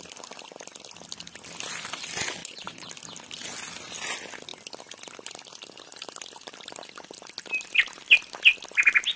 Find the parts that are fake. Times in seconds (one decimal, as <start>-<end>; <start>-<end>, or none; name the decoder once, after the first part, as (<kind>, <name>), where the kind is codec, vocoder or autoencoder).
2.4-2.9 (vocoder, Vocos)